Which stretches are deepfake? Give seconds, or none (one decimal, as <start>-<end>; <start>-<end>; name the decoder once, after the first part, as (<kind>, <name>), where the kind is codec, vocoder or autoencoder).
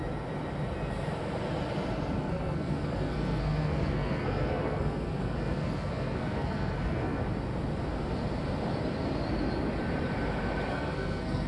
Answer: 2.2-7.2 (codec, SNAC); 10.7-11.5